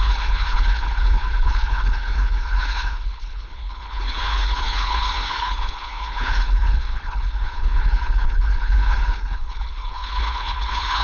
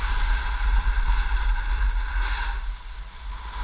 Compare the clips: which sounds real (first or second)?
second